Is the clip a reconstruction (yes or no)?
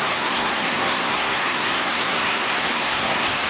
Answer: yes